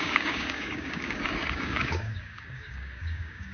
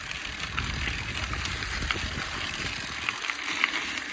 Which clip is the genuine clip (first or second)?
second